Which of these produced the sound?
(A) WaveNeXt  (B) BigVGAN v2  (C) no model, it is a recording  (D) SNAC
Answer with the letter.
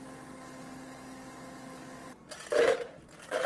C